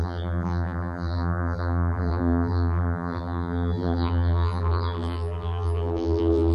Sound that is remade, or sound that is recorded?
remade